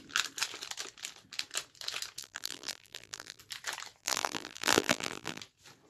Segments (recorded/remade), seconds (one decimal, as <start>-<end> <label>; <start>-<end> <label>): 0.0-2.2 recorded; 2.2-3.4 remade; 3.4-4.0 recorded; 4.0-5.4 remade; 5.4-5.9 recorded